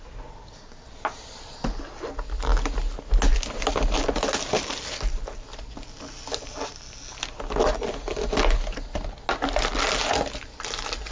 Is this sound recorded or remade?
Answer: recorded